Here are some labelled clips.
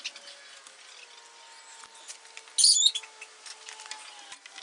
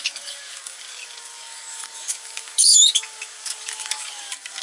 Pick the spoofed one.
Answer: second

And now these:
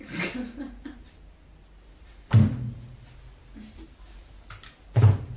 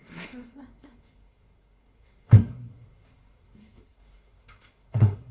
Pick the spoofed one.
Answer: second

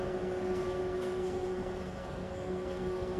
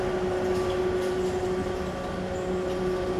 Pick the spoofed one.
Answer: first